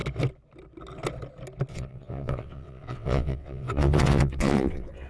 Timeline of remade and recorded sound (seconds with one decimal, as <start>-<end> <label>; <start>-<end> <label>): 0.0-1.7 recorded; 1.7-5.1 remade